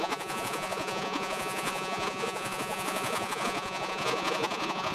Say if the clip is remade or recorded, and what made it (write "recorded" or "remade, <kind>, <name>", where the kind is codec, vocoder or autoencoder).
remade, vocoder, Vocos